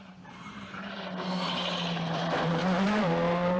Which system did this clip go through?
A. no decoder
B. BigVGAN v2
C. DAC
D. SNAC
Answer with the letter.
B